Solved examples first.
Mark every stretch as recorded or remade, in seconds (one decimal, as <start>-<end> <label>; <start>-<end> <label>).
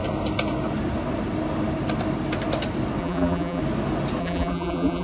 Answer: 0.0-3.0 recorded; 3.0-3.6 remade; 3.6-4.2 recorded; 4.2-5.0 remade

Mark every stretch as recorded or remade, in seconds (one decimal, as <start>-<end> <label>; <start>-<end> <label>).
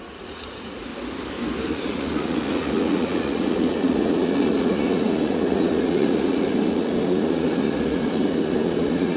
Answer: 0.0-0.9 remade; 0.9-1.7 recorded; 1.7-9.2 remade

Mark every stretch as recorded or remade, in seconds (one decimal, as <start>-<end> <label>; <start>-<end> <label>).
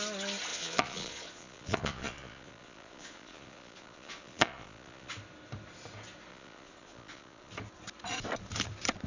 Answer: 0.0-0.5 recorded; 0.5-5.1 remade; 5.1-6.3 recorded; 6.3-7.5 remade; 7.5-9.1 recorded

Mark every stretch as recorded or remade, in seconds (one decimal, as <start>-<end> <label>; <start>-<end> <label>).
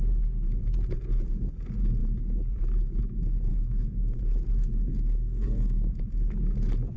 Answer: 0.0-3.5 recorded; 3.5-4.2 remade; 4.2-4.9 recorded; 4.9-5.9 remade; 5.9-7.0 recorded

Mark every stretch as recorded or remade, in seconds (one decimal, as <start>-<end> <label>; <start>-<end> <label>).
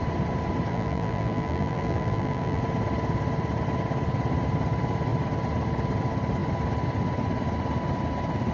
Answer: 0.0-0.7 recorded; 0.7-2.6 remade; 2.6-8.5 recorded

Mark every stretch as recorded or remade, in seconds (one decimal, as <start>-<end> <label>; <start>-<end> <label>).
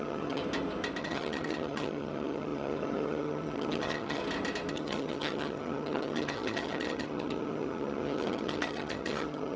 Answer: 0.0-0.4 remade; 0.4-1.0 recorded; 1.0-4.2 remade; 4.2-4.7 recorded; 4.7-9.6 remade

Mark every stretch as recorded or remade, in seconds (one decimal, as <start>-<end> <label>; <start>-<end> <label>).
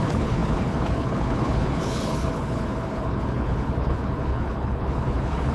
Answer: 0.0-5.5 remade